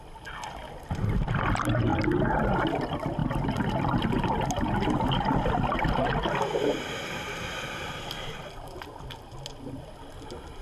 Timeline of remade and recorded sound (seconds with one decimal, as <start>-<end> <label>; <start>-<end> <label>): 0.0-10.6 recorded